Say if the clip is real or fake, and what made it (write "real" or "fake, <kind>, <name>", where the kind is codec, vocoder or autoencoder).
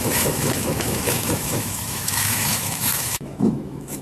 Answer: fake, autoencoder, DAC-VAE